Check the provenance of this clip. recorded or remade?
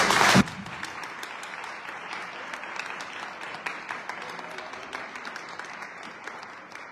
remade